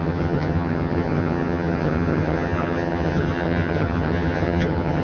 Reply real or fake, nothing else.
fake